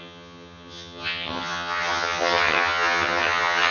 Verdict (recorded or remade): remade